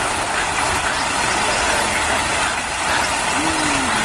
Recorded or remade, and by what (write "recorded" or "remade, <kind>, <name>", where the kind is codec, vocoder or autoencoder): recorded